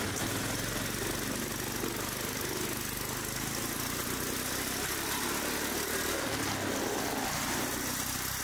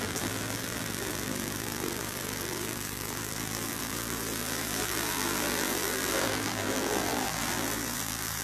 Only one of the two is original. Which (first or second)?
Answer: first